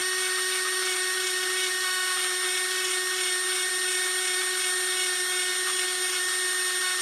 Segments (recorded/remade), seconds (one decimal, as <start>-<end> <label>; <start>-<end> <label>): 0.0-7.0 recorded